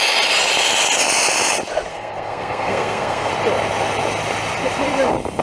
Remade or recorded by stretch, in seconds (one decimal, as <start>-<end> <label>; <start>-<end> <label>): 0.0-1.9 recorded; 1.9-3.3 remade; 3.3-5.4 recorded